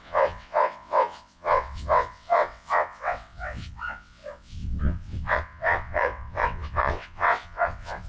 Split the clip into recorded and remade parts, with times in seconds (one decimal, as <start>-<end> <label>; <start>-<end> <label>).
0.0-8.1 remade